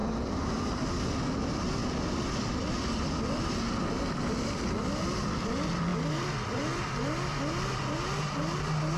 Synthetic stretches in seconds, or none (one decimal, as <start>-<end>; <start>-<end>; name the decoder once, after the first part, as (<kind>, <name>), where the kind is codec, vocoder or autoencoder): 0.0-0.6 (vocoder, BigVGAN v2); 5.9-6.9